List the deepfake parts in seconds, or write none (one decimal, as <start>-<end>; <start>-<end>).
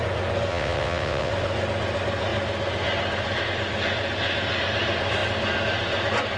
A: 0.5-1.3